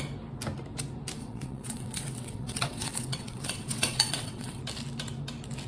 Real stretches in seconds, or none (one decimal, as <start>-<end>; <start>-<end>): 0.0-1.2; 4.6-5.7